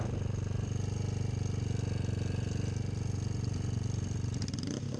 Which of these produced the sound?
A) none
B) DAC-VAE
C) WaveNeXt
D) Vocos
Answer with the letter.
A